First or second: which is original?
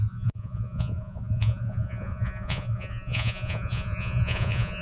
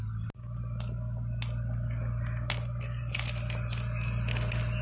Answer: second